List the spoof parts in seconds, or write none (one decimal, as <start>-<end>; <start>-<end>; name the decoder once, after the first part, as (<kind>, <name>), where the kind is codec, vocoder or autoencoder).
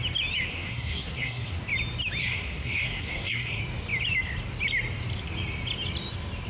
0.5-1.6 (codec, SNAC); 2.2-3.6